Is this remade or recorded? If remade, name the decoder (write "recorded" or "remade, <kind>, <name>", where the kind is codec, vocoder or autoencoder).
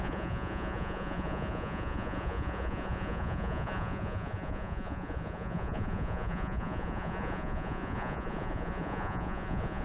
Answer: remade, vocoder, Vocos